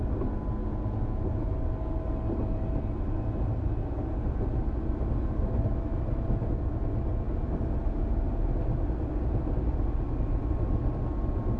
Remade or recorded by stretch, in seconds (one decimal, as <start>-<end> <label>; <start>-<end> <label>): 0.0-0.6 recorded; 0.6-1.5 remade; 1.5-11.6 recorded